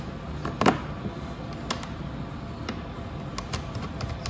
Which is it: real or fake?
real